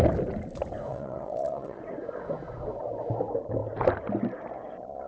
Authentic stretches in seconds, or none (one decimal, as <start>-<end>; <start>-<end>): 0.0-0.9; 1.8-5.1